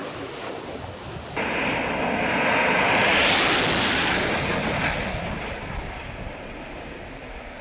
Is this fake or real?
real